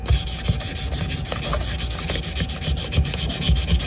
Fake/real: real